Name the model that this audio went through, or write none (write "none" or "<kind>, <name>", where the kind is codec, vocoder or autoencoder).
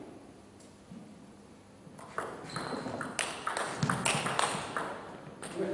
none